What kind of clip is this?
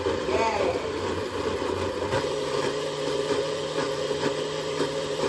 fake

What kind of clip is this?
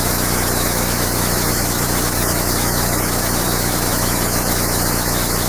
fake